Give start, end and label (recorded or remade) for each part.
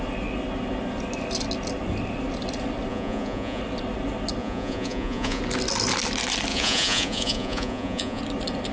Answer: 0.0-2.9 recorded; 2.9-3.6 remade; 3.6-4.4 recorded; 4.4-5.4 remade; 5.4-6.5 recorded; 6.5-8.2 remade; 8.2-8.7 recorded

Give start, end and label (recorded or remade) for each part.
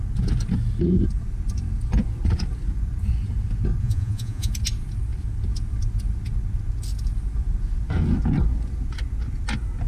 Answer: 0.0-3.8 recorded; 3.8-4.5 remade; 4.5-9.9 recorded